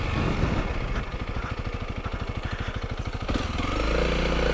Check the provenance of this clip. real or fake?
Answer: real